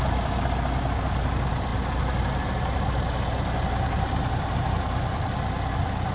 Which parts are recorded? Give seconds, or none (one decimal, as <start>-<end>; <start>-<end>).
0.0-6.1